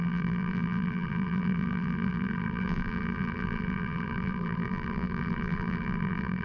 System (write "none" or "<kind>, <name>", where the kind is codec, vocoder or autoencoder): vocoder, BigVGAN v2